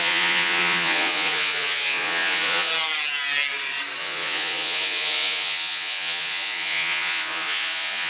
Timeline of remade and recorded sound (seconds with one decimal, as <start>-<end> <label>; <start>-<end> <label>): 0.0-2.7 remade; 2.7-4.0 recorded; 4.0-8.1 remade